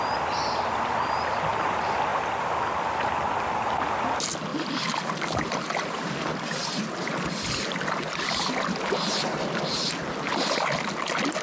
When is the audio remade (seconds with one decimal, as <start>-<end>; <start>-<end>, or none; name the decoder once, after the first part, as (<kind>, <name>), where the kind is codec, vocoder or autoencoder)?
none